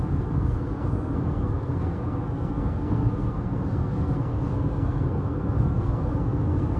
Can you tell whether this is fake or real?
fake